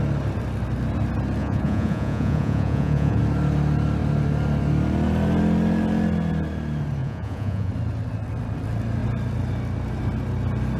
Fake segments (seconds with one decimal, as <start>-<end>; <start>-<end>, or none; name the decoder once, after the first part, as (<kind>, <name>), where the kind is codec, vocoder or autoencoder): 1.4-3.2 (vocoder, Vocos); 7.0-7.7